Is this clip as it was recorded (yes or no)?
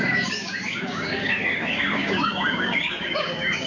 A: no